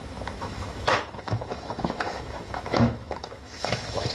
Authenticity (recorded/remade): remade